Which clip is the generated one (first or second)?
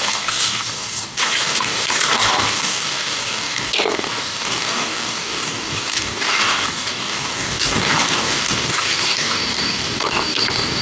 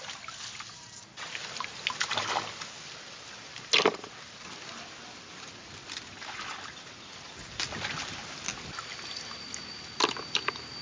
first